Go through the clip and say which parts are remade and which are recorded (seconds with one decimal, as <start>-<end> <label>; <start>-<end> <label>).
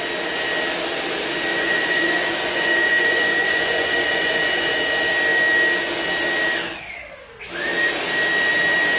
0.0-1.5 recorded; 1.5-4.7 remade; 4.7-9.0 recorded